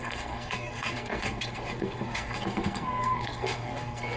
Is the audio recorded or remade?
remade